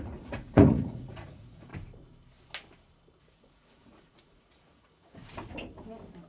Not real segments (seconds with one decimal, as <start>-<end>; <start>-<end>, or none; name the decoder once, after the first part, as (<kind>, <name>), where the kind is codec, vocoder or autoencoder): 0.0-1.7 (vocoder, Vocos); 3.2-5.2

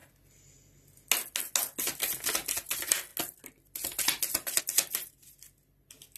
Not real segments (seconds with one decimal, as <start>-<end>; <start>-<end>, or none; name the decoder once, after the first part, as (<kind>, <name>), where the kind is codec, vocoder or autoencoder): none

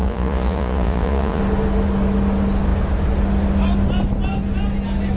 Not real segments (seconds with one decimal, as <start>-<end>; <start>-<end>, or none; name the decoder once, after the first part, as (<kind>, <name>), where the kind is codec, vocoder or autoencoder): 0.0-1.4 (vocoder, Vocos)